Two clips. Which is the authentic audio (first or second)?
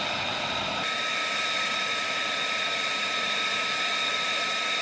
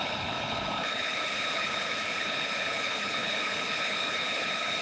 first